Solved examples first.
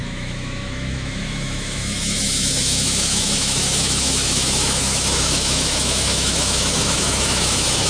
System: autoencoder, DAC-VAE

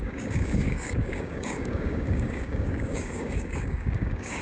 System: codec, DAC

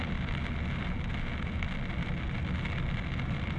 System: none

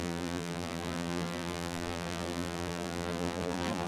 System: vocoder, BigVGAN v2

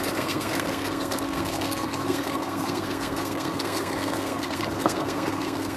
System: codec, SNAC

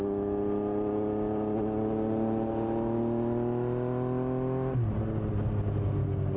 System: none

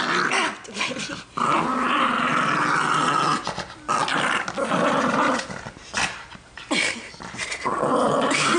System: none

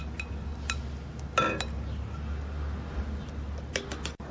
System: none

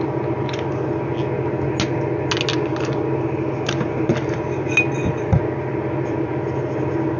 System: none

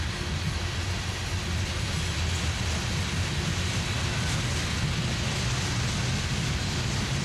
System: none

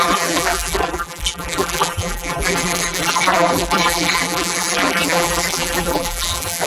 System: vocoder, BigVGAN v2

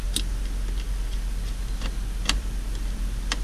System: none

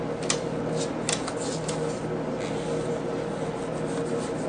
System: none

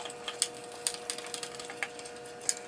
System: none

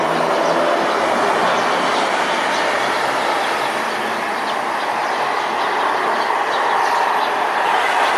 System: none